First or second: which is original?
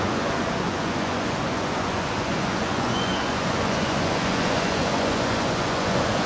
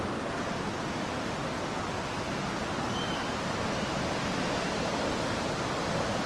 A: second